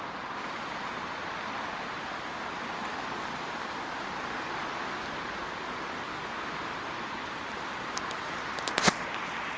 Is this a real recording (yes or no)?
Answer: yes